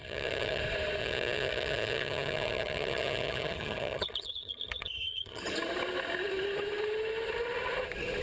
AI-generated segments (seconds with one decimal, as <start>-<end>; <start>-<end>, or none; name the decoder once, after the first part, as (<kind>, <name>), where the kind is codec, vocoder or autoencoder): 0.0-0.6 (vocoder, HiFi-GAN); 1.0-5.4